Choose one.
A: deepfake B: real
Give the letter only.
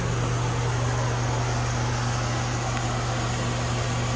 B